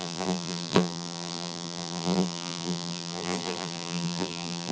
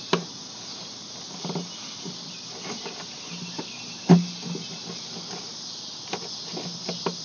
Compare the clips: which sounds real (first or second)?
second